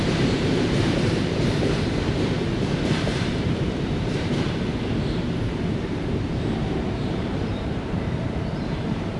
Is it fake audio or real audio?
fake